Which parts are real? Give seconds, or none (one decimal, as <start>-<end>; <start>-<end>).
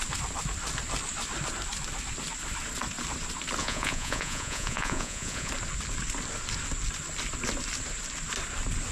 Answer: 0.0-3.6; 5.5-8.9